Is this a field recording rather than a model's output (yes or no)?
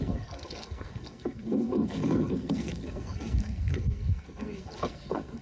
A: no